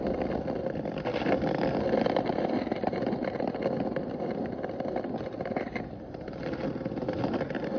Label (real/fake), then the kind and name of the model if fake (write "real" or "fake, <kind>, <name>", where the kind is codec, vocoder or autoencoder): real